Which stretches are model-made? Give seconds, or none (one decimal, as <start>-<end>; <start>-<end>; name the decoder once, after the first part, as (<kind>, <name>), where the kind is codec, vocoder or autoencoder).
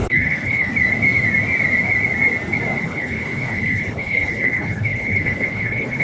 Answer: 0.0-0.7 (codec, HILCodec); 2.8-6.0